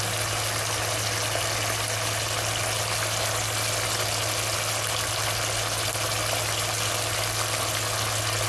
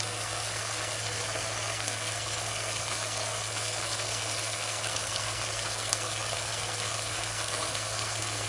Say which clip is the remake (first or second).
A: second